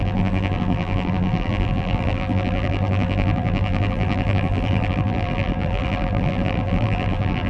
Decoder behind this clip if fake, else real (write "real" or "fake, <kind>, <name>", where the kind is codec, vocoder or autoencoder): fake, vocoder, BigVGAN v2